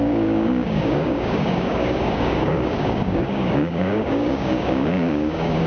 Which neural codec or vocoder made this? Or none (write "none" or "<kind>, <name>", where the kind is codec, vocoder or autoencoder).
codec, DAC